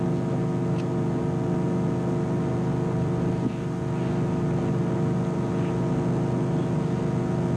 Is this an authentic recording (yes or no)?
yes